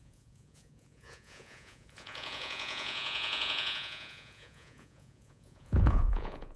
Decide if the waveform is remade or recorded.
remade